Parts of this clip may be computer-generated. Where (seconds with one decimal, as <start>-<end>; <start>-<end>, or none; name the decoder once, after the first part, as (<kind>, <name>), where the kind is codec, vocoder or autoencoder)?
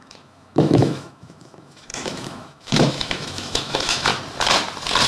0.0-4.1 (autoencoder, DAC-VAE)